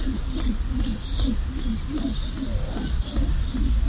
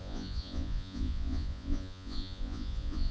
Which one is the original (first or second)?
first